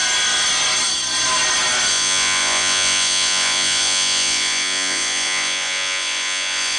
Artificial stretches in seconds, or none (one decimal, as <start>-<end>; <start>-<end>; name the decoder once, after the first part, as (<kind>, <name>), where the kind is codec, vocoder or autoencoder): 1.9-6.8 (vocoder, Vocos)